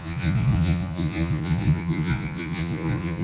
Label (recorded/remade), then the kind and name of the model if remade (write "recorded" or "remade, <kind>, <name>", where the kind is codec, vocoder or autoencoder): remade, vocoder, Vocos